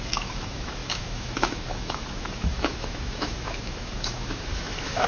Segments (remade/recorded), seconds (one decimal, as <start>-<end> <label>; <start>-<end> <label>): 0.0-5.1 remade